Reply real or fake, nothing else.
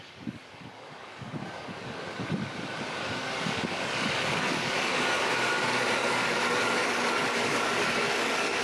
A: fake